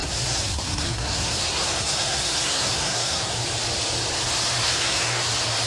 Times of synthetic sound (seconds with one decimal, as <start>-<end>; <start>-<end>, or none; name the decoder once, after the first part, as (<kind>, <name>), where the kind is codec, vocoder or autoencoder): 0.0-3.4 (codec, SNAC); 4.6-5.3